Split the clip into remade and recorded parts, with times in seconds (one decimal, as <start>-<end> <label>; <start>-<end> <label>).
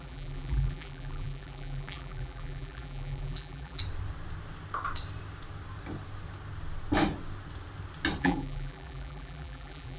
0.0-3.8 remade; 3.8-8.2 recorded; 8.2-10.0 remade